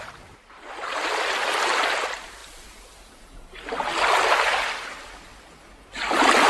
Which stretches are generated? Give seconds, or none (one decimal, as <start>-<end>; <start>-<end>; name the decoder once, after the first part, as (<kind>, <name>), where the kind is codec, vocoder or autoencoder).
none